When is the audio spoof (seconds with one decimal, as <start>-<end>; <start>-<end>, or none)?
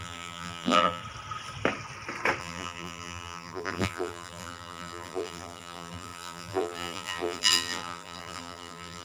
0.0-1.0; 2.4-9.0